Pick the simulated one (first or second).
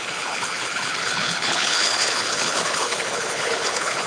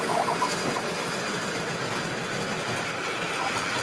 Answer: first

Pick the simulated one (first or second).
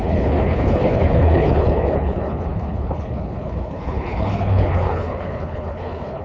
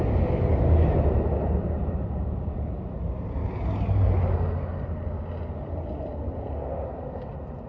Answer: first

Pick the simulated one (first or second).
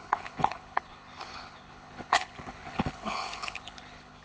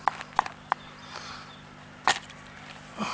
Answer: first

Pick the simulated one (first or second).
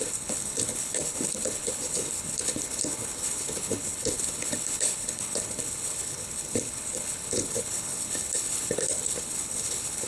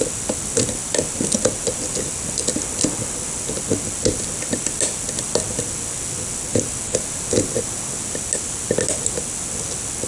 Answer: first